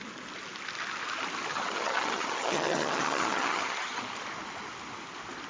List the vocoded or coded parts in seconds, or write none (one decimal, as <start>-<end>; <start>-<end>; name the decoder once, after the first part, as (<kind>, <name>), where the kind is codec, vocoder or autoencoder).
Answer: 1.5-4.0 (vocoder, HiFi-GAN)